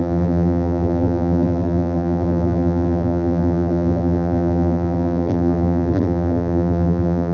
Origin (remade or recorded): remade